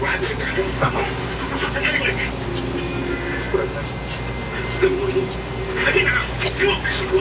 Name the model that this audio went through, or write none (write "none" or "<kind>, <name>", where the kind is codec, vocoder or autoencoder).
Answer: none